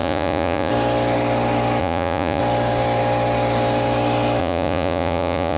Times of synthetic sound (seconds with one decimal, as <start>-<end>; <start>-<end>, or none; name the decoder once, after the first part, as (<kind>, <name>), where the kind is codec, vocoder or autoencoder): 0.0-0.7 (vocoder, Vocos); 1.8-2.4; 4.4-5.6